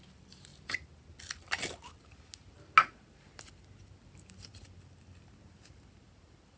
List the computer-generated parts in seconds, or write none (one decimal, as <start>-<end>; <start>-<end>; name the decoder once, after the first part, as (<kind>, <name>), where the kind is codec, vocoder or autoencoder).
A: none